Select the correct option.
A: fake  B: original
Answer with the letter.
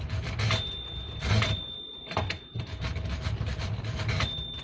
A